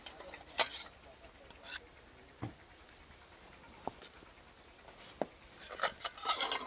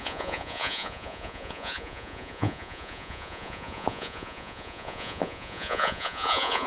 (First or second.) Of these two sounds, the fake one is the second